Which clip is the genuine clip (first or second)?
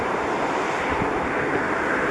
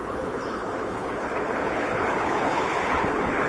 first